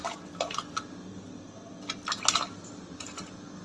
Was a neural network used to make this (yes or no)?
no